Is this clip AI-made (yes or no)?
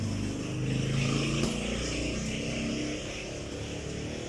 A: no